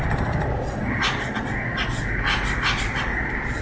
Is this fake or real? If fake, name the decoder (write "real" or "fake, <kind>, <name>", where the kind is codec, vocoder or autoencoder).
real